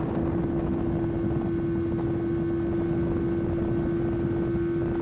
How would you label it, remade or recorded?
recorded